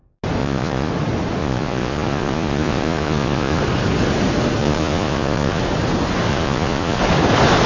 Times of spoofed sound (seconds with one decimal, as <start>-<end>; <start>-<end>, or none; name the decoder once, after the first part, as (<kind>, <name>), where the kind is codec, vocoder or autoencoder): 0.4-0.9 (vocoder, Vocos); 1.4-3.6; 4.6-5.6; 6.3-7.0